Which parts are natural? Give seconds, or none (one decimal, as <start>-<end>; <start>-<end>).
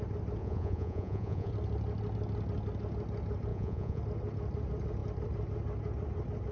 0.0-0.4; 1.5-3.5; 4.0-6.5